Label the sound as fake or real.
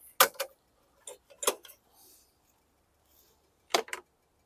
real